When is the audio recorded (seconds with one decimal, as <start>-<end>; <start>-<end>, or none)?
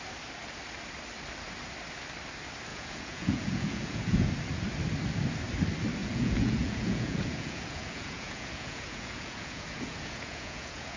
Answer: 0.0-2.7; 4.3-6.0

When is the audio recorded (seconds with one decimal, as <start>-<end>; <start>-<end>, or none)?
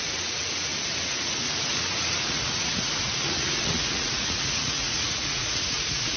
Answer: none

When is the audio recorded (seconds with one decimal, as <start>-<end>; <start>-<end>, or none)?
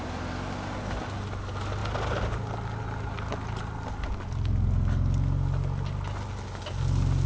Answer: 0.0-7.3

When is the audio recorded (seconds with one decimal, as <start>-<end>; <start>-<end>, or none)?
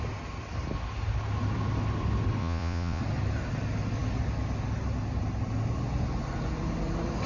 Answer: 0.0-2.4; 3.0-7.3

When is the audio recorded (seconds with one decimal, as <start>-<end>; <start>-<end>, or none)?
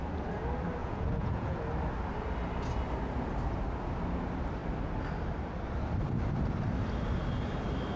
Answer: 0.0-0.8; 1.6-8.0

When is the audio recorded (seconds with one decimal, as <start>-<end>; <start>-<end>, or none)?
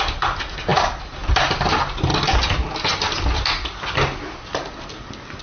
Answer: 0.0-5.4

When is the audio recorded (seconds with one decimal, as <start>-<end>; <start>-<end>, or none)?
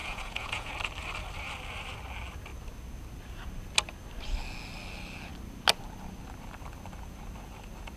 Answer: 0.7-8.0